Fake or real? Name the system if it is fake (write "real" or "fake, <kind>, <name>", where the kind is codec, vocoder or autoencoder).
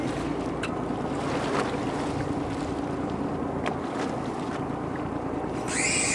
real